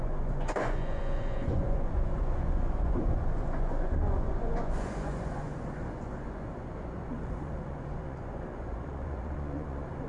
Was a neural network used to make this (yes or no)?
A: yes